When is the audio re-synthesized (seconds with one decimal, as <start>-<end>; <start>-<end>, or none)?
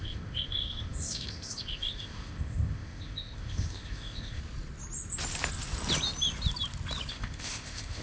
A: 0.0-4.4; 7.1-8.0